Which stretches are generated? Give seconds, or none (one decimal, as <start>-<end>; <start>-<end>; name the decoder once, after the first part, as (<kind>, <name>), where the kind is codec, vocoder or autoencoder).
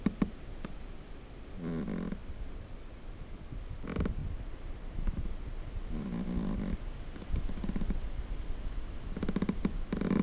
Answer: 2.2-2.7 (vocoder, BigVGAN v2); 4.2-5.8